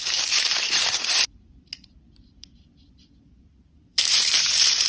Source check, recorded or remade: remade